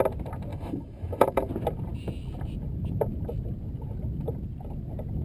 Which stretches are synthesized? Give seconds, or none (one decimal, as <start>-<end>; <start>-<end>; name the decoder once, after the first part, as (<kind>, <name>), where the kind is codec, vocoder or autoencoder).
0.5-1.5 (autoencoder, DAC-VAE)